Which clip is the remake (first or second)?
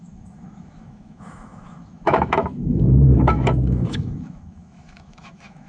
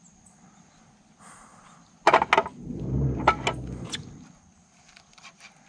first